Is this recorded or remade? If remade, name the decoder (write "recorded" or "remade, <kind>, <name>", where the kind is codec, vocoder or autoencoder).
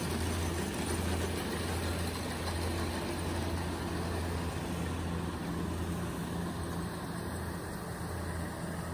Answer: recorded